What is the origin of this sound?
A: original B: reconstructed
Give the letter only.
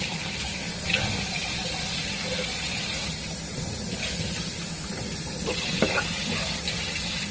A